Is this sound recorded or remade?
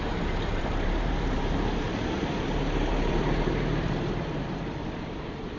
remade